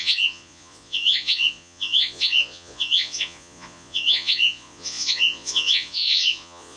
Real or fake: fake